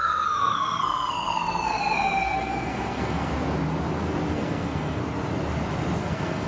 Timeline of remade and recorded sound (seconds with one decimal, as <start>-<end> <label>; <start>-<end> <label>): 0.0-3.3 remade; 3.3-4.3 recorded; 4.3-5.0 remade; 5.0-6.0 recorded; 6.0-6.5 remade